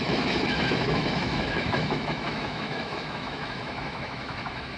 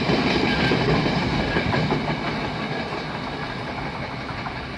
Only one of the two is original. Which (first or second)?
second